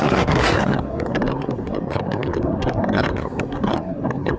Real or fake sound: fake